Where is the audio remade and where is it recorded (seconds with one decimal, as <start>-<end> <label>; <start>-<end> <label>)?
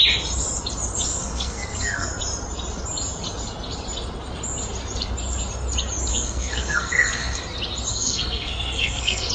0.0-1.1 recorded; 1.1-2.1 remade; 2.1-6.1 recorded; 6.1-7.4 remade; 7.4-7.9 recorded; 7.9-9.3 remade